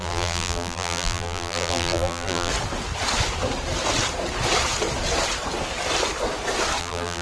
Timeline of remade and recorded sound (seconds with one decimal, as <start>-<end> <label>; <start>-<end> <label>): 0.0-2.5 remade; 2.5-6.8 recorded; 6.8-7.2 remade